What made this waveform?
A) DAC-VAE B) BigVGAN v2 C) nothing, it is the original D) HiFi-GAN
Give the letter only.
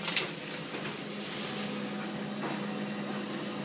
C